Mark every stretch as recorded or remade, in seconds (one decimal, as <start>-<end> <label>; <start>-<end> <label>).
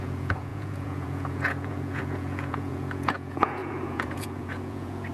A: 0.0-5.1 remade